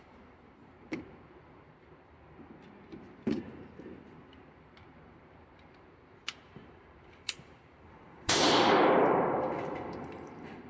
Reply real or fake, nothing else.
fake